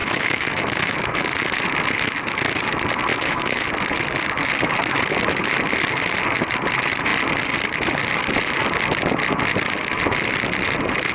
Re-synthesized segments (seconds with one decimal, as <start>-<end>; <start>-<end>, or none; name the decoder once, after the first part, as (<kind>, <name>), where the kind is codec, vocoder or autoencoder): 0.0-1.6 (autoencoder, DAC-VAE); 3.1-3.7